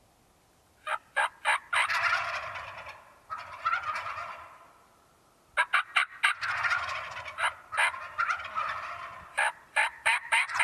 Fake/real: real